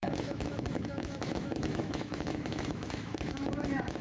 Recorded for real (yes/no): no